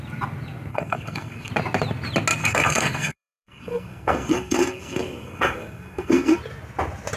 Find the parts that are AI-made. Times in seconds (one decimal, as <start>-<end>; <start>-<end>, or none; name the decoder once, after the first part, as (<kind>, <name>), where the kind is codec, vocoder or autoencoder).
0.7-1.5 (codec, SNAC); 2.4-6.4